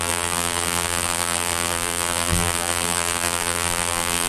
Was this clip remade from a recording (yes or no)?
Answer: yes